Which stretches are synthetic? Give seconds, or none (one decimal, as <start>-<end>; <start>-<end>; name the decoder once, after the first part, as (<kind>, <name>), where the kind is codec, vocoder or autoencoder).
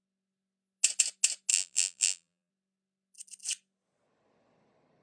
1.5-2.5 (vocoder, BigVGAN v2)